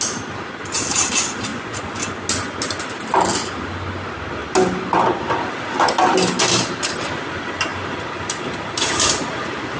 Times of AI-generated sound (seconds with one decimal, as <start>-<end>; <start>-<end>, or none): 1.5-2.0